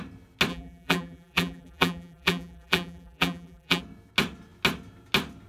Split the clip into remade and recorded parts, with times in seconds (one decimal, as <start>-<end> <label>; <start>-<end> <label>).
0.0-0.5 recorded; 0.5-3.8 remade; 3.8-5.5 recorded